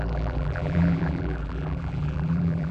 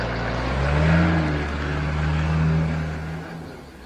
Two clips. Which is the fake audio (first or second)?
first